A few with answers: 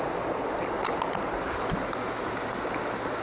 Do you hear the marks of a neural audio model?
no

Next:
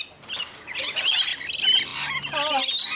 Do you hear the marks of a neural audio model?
no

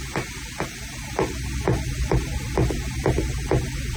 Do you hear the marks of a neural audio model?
no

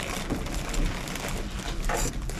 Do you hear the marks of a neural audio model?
no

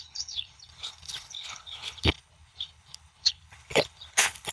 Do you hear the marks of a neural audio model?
yes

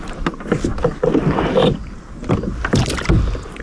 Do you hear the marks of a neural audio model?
no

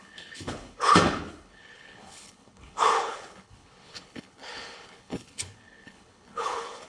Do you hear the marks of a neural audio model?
yes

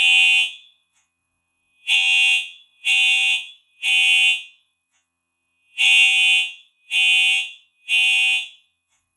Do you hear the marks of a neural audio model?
yes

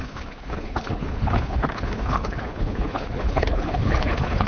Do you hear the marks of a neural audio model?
yes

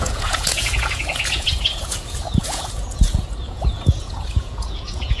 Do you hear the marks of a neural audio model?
yes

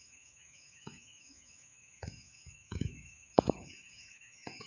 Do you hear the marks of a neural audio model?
yes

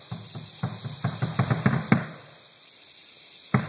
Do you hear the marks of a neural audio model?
yes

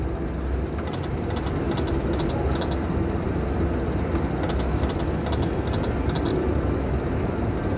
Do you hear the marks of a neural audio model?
no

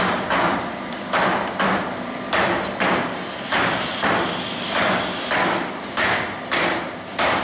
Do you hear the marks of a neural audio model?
yes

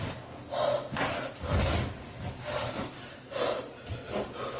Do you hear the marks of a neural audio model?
no